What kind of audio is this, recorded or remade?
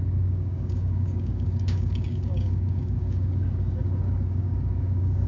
remade